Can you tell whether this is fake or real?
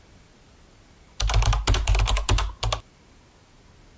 real